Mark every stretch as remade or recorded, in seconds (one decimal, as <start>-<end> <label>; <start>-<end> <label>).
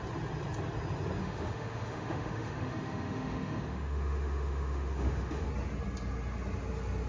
0.0-1.2 recorded; 1.2-5.5 remade; 5.5-7.1 recorded